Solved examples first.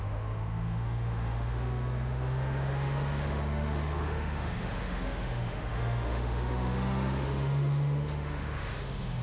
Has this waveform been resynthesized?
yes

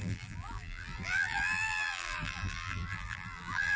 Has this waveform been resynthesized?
yes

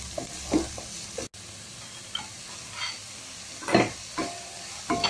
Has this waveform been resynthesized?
no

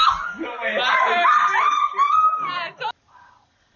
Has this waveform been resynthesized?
no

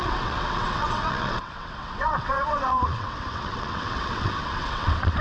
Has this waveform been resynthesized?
yes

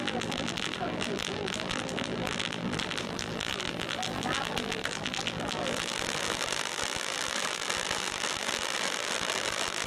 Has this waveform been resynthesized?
yes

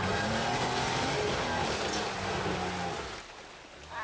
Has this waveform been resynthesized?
no